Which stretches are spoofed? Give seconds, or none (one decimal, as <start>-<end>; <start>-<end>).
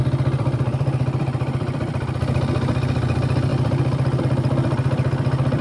0.0-5.6